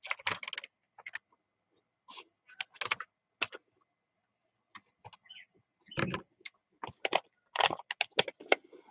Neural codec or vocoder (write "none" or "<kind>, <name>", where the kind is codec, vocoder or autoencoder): none